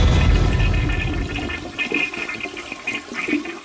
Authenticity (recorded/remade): recorded